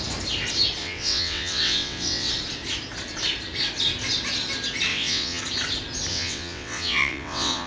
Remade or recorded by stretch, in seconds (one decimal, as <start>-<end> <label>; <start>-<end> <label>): 0.0-0.8 recorded; 0.8-2.3 remade; 2.3-4.9 recorded; 4.9-5.4 remade; 5.4-6.1 recorded; 6.1-7.7 remade